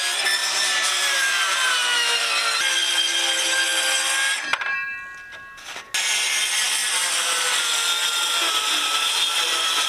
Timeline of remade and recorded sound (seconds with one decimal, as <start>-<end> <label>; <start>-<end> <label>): 0.0-0.4 recorded; 0.4-2.3 remade; 2.3-9.9 recorded